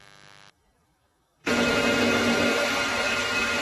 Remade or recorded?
remade